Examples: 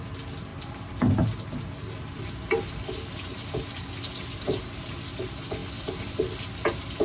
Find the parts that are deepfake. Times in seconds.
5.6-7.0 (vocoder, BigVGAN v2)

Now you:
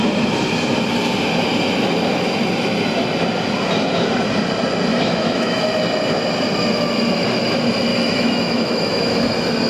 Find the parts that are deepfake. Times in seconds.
4.9-5.6 (autoencoder, DAC-VAE); 7.9-9.2

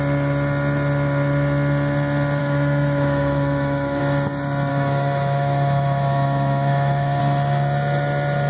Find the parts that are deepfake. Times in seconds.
2.4-4.0 (autoencoder, DAC-VAE); 4.7-7.2

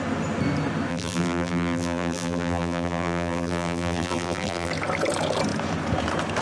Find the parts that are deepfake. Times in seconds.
0.9-4.7 (vocoder, BigVGAN v2)

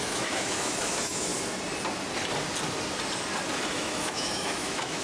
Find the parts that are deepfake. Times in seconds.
0.0-1.3 (autoencoder, DAC-VAE); 3.7-5.0

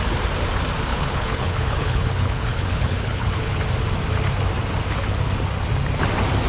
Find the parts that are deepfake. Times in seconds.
0.9-3.6 (codec, HILCodec)

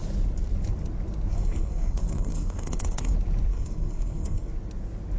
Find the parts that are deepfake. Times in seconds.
1.3-3.1 (codec, SNAC); 3.5-4.5